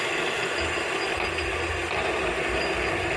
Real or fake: real